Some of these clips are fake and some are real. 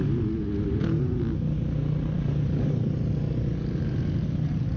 real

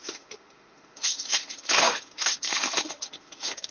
fake